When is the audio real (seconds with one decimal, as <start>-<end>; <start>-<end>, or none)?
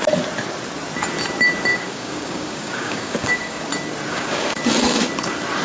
0.0-1.7; 3.6-4.1; 4.6-5.6